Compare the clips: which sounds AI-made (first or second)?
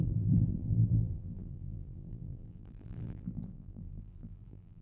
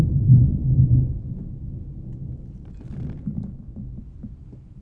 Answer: first